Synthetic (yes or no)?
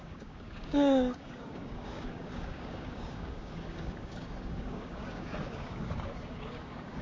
yes